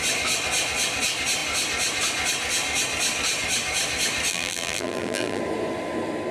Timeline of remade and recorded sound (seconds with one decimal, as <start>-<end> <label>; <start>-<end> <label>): 0.0-4.3 recorded; 4.3-5.4 remade; 5.4-6.3 recorded